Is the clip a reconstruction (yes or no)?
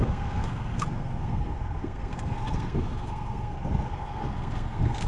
yes